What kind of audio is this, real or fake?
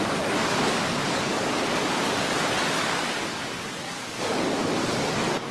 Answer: fake